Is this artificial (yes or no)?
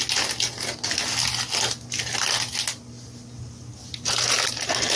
no